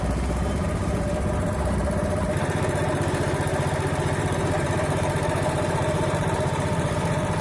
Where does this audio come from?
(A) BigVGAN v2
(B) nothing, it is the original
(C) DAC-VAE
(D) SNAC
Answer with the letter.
A